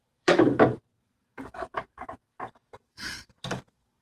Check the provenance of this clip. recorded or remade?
remade